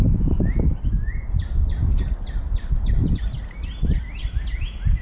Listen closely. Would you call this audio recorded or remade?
recorded